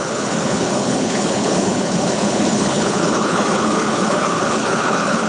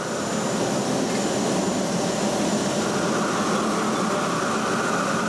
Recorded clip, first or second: second